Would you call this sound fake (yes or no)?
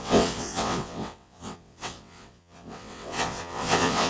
yes